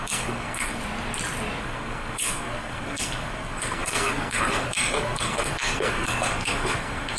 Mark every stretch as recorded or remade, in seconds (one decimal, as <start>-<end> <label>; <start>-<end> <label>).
0.0-0.8 remade; 0.8-1.6 recorded; 1.6-7.2 remade